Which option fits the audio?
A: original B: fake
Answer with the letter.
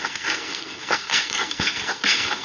B